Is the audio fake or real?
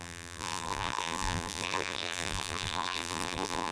fake